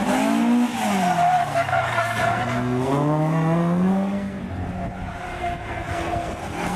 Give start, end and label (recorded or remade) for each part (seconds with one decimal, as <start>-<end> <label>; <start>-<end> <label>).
0.0-1.5 recorded; 1.5-4.4 remade; 4.4-5.3 recorded; 5.3-6.8 remade